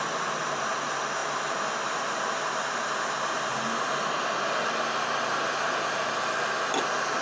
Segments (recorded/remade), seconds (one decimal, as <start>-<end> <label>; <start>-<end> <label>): 0.0-7.2 recorded